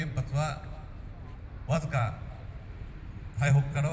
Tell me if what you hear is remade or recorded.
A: remade